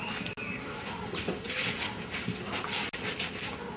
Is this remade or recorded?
recorded